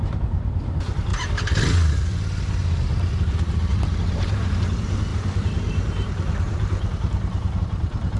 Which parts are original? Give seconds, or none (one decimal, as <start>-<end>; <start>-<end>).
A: 0.0-3.7; 4.6-5.1; 7.6-8.2